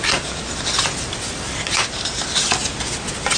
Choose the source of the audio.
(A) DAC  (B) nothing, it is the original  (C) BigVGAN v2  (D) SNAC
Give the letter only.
B